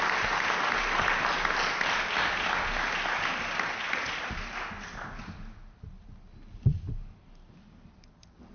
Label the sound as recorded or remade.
recorded